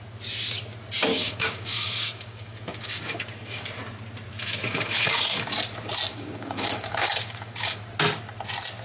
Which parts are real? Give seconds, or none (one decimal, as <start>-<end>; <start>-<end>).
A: 0.0-1.1; 3.8-4.3; 5.4-6.1; 7.8-8.8